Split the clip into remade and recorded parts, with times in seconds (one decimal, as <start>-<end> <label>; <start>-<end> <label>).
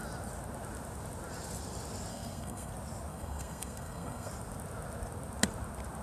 0.0-2.1 recorded; 2.1-2.7 remade; 2.7-3.1 recorded; 3.1-4.3 remade; 4.3-6.0 recorded